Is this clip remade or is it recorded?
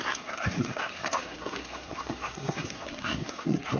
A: remade